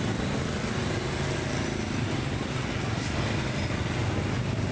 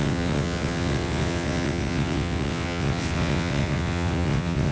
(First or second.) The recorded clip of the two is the first